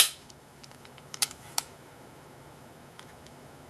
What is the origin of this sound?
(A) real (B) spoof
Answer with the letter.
B